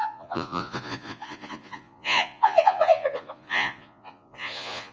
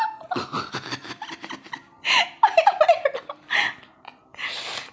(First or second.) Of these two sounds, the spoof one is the first